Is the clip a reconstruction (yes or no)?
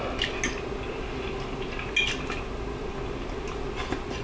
no